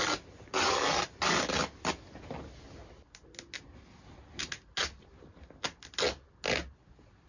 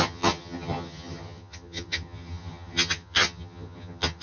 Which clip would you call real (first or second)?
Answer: first